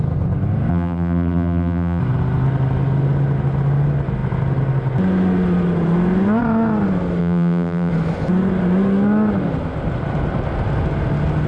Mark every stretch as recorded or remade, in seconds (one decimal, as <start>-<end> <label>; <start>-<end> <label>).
0.0-0.7 recorded; 0.7-2.0 remade; 2.0-7.2 recorded; 7.2-7.9 remade; 7.9-11.5 recorded